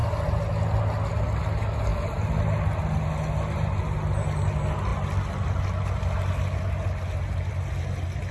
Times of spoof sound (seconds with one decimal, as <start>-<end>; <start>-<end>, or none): none